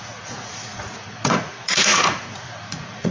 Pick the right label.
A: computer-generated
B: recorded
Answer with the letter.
A